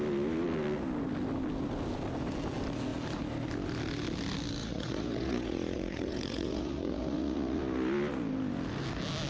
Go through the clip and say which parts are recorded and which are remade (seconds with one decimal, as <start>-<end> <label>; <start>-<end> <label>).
0.0-4.6 recorded; 4.6-7.6 remade; 7.6-9.3 recorded